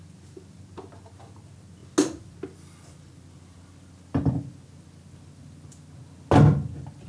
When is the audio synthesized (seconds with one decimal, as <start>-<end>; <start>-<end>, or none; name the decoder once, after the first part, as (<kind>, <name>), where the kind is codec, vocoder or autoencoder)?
none